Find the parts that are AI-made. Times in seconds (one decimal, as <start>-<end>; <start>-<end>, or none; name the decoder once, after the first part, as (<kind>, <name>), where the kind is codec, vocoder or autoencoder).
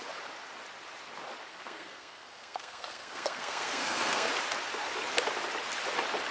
1.5-4.3 (codec, SNAC)